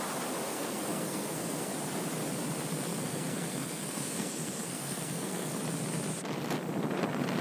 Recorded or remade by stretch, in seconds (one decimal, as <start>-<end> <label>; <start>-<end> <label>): 0.0-0.5 recorded; 0.5-1.7 remade; 1.7-2.7 recorded; 2.7-5.6 remade; 5.6-7.4 recorded

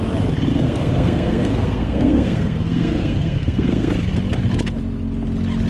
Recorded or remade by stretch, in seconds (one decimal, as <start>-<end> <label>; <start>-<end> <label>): 0.0-0.5 recorded; 0.5-3.9 remade; 3.9-5.7 recorded

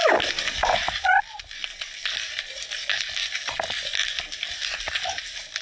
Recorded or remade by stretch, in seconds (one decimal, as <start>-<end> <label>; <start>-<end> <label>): 0.0-5.6 recorded

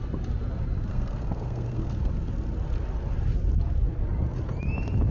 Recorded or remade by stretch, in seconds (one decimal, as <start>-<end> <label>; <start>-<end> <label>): 0.0-0.9 recorded; 0.9-2.1 remade; 2.1-5.1 recorded